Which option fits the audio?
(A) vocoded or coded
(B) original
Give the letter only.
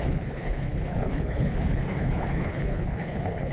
A